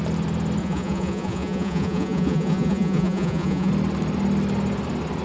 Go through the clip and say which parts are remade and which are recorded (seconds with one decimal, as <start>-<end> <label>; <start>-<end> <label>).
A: 0.0-0.6 recorded; 0.6-3.7 remade; 3.7-5.2 recorded

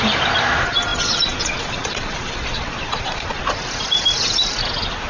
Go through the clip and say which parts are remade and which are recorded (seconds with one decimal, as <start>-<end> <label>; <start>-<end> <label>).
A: 0.0-0.9 recorded; 0.9-3.4 remade; 3.4-5.1 recorded

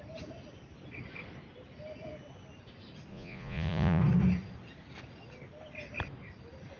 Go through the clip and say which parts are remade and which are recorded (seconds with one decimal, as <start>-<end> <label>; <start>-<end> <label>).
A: 0.0-3.1 recorded; 3.1-4.0 remade; 4.0-6.8 recorded

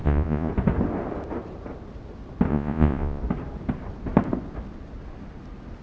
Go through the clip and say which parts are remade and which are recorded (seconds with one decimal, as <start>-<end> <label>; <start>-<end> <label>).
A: 0.0-0.5 remade; 0.5-2.5 recorded; 2.5-3.2 remade; 3.2-5.8 recorded

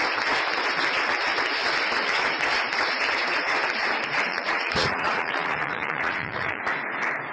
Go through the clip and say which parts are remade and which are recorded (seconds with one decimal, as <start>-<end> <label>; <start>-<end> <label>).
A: 0.0-4.3 recorded; 4.3-6.6 remade; 6.6-7.3 recorded